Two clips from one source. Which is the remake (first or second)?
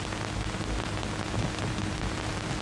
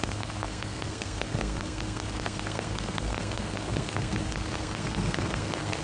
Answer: second